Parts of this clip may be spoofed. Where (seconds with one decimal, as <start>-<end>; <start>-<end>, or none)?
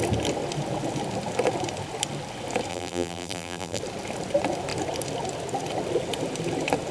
2.7-3.8